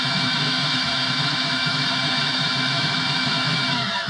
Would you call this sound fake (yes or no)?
yes